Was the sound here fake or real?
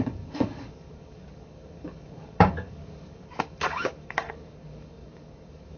fake